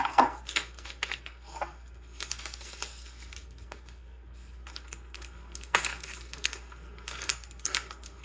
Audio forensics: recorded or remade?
remade